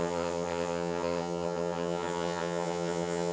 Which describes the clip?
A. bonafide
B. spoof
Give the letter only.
B